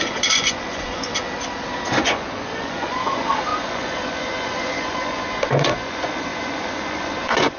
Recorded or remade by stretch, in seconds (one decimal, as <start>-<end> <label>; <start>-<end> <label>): 0.0-1.1 remade; 1.1-2.0 recorded; 2.0-7.6 remade